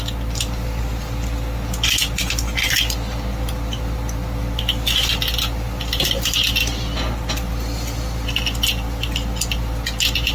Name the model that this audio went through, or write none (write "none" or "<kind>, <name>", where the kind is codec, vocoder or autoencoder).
none